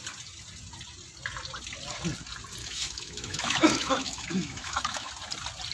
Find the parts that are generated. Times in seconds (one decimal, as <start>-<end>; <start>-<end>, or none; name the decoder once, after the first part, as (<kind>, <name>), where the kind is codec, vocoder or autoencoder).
2.6-5.1 (autoencoder, DAC-VAE)